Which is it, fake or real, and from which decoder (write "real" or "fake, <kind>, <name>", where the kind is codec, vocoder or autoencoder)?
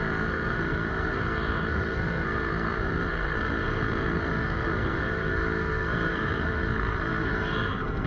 fake, codec, SNAC